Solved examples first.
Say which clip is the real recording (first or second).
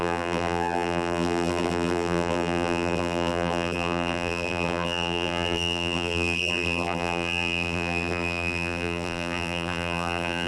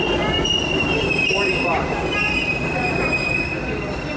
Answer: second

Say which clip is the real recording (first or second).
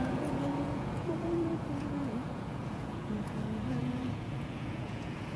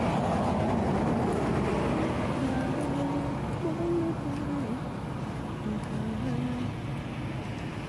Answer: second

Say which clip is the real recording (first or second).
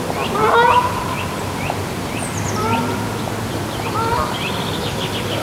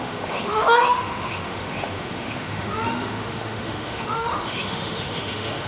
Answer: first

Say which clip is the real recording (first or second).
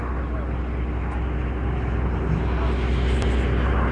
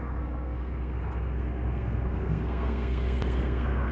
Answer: first